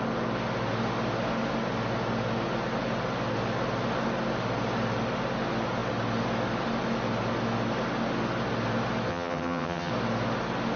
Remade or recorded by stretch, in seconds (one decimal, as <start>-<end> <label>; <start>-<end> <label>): 0.0-9.1 recorded; 9.1-9.9 remade; 9.9-10.8 recorded